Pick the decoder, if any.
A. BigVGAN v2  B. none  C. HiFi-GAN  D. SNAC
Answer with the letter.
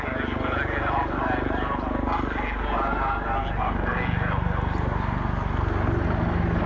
B